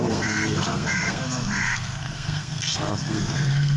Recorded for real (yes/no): no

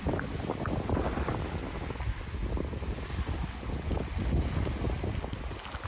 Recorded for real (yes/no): yes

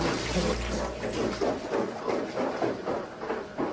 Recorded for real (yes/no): yes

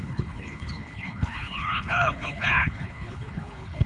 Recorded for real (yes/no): no